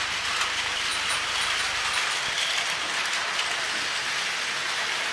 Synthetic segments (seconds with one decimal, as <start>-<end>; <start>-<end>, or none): none